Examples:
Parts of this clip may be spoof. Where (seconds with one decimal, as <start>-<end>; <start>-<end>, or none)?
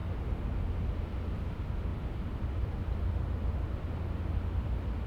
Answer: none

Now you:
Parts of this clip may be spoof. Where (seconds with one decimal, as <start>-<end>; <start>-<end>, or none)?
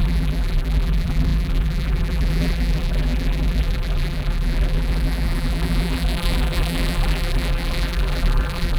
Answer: 0.0-8.8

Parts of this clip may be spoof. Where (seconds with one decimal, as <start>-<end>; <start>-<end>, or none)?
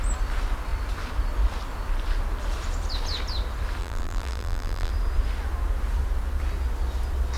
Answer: 3.8-4.9